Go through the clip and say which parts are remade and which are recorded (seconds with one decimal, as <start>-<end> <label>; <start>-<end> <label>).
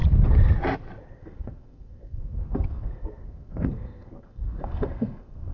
0.0-1.2 recorded; 1.2-5.5 remade